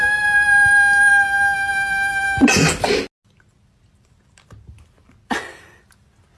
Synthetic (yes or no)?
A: no